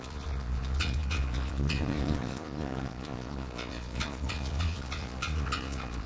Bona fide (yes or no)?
no